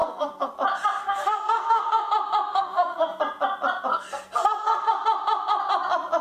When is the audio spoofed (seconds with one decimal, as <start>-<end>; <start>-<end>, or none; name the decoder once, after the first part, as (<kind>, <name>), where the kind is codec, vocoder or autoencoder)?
0.0-0.5 (codec, SNAC); 1.0-2.1; 2.5-3.2; 3.9-4.9